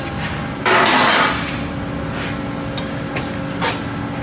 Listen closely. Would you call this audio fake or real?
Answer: real